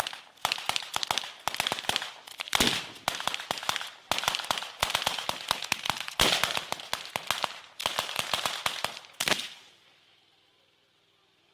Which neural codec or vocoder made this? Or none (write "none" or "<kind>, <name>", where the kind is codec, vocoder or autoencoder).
none